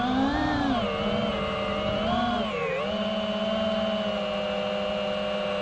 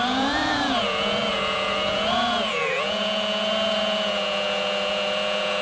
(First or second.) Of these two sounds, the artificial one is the second